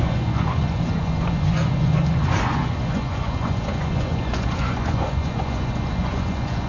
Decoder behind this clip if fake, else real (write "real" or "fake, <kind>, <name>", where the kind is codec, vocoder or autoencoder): fake, vocoder, Vocos